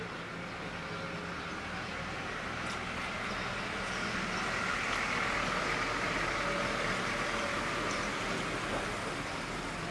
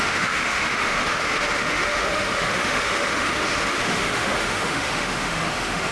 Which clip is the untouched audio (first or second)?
first